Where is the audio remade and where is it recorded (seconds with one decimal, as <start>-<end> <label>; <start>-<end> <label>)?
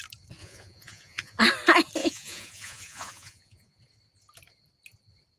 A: 0.0-0.4 recorded; 0.4-1.4 remade; 1.4-2.0 recorded; 2.0-3.8 remade; 3.8-5.4 recorded